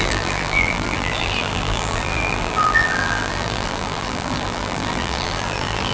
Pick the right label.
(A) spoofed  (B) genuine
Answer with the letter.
A